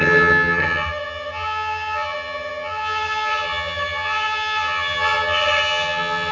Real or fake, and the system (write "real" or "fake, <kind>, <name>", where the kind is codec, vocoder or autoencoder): fake, vocoder, HiFi-GAN